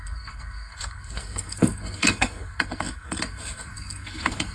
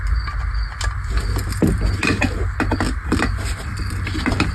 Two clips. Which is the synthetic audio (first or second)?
first